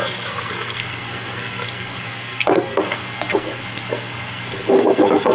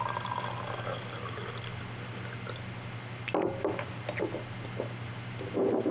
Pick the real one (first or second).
second